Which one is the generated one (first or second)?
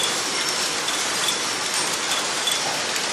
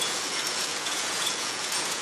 second